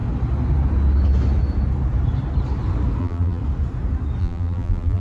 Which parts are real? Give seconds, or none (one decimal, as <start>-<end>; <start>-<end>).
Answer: 0.0-3.0; 3.4-4.2